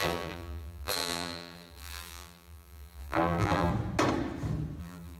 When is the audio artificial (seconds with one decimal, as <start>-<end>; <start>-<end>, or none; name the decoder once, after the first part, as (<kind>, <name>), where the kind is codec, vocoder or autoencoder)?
0.0-3.7 (vocoder, BigVGAN v2); 4.8-5.2